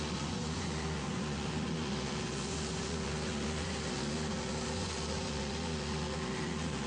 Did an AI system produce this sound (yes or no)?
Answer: yes